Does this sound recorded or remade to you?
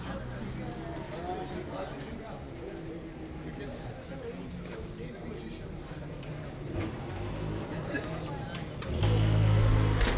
recorded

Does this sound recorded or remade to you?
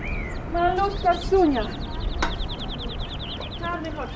recorded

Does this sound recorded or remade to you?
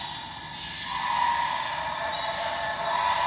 recorded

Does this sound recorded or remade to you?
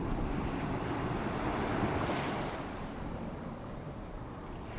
recorded